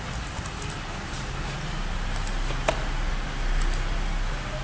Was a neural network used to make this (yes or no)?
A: no